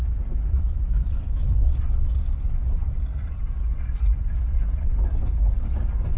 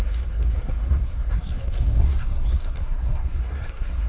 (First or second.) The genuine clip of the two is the first